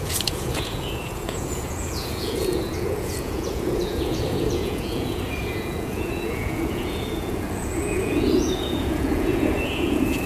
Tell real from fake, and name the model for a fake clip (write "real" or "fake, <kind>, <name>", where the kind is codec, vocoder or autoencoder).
fake, vocoder, Vocos